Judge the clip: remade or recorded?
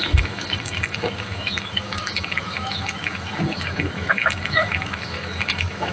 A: remade